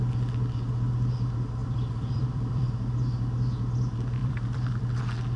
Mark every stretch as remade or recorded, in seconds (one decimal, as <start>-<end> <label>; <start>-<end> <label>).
0.0-1.6 recorded; 1.6-2.7 remade; 2.7-4.2 recorded; 4.2-4.9 remade; 4.9-5.4 recorded